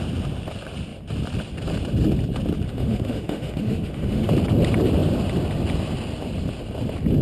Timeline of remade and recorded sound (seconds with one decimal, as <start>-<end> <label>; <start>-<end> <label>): 0.0-2.7 recorded; 2.7-4.3 remade; 4.3-7.2 recorded